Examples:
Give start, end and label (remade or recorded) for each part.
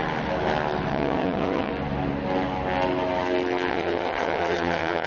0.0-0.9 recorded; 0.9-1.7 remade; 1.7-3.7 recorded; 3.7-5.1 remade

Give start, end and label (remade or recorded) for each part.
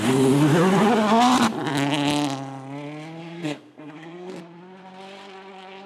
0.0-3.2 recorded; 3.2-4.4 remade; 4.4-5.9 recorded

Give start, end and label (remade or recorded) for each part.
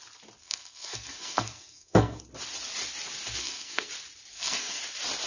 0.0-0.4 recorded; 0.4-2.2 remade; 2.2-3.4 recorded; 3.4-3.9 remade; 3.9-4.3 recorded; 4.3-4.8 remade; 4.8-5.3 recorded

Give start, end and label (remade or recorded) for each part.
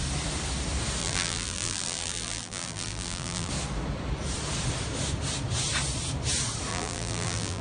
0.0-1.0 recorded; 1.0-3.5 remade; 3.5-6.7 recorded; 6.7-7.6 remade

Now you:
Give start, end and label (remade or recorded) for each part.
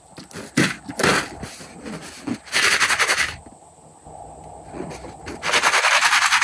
0.0-6.4 recorded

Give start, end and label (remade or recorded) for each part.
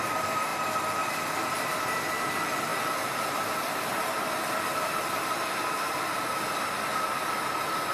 0.0-7.9 recorded